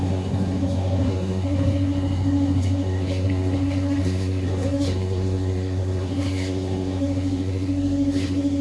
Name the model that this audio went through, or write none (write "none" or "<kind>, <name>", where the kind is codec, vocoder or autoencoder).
codec, SNAC